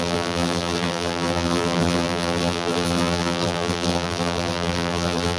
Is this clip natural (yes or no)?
no